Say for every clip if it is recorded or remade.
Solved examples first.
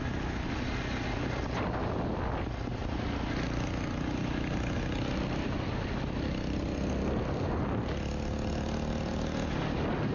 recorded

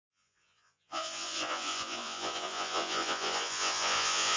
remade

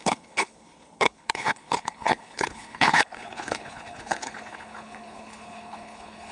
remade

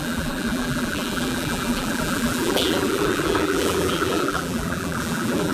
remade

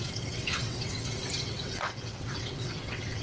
remade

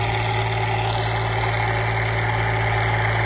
recorded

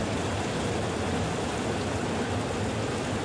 recorded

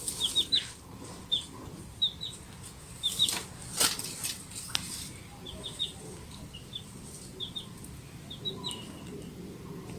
recorded